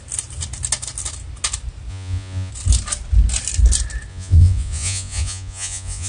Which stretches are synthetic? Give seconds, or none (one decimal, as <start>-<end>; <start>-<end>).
1.9-2.5; 4.1-6.1